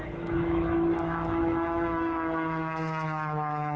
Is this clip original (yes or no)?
no